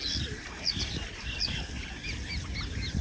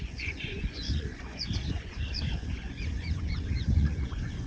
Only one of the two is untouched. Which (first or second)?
first